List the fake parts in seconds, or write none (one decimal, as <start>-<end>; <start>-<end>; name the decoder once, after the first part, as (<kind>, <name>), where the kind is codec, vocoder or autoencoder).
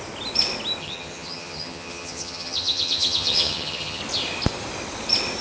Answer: 0.8-4.0 (vocoder, HiFi-GAN)